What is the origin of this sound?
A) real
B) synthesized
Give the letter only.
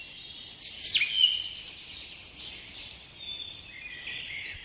A